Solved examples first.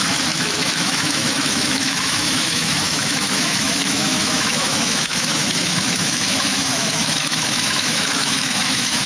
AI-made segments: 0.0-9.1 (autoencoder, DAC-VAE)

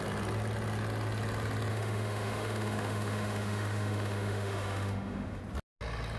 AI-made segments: 1.7-5.4 (autoencoder, DAC-VAE)

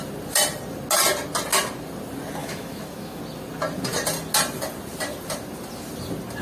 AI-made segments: 2.4-3.2 (autoencoder, DAC-VAE)